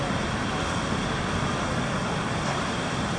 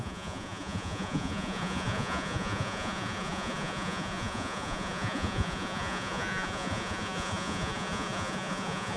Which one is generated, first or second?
second